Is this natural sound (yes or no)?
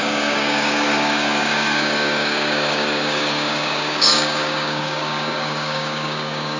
no